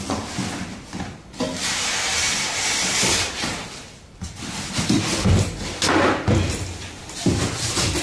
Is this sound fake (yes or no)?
yes